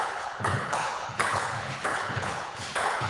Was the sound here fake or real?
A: fake